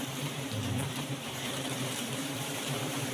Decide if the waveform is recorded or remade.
remade